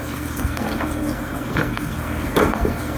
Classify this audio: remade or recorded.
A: remade